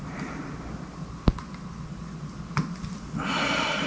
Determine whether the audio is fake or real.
real